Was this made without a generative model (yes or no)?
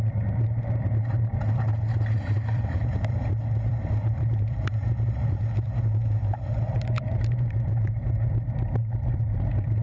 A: no